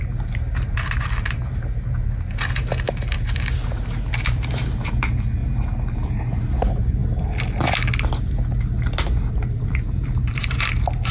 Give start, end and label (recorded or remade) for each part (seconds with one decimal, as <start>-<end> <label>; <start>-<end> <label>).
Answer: 0.0-7.0 remade; 7.0-9.3 recorded; 9.3-11.1 remade